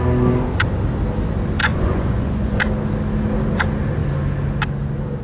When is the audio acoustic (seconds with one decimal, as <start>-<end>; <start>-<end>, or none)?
0.0-1.6; 2.6-5.2